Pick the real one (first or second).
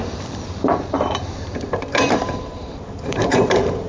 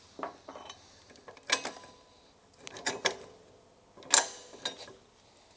second